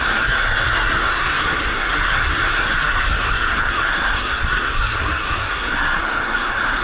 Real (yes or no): no